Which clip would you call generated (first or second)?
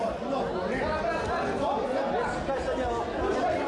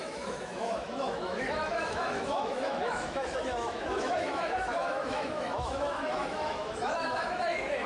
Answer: second